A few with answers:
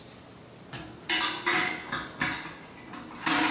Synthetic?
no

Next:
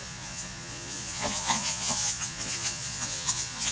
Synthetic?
yes